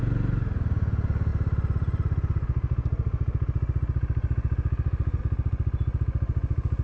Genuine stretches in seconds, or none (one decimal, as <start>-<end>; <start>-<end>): 0.0-6.8